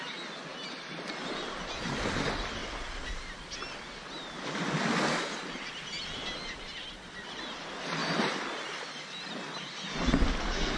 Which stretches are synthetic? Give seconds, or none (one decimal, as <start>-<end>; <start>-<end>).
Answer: none